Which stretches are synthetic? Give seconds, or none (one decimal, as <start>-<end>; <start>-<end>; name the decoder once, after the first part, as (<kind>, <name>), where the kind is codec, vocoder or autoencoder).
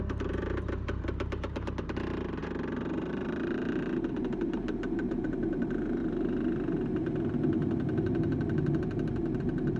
0.0-2.4 (vocoder, BigVGAN v2); 3.1-3.6; 4.1-6.0; 9.4-9.8